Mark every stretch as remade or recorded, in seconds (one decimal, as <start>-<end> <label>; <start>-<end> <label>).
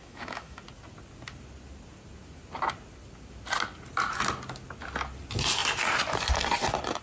0.0-0.6 remade; 0.6-7.0 recorded